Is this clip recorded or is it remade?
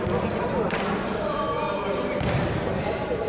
recorded